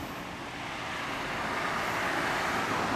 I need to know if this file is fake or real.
real